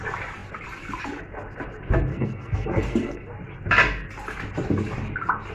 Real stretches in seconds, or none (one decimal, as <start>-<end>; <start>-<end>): 0.0-2.1; 3.3-5.5